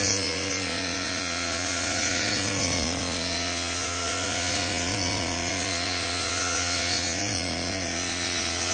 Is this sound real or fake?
fake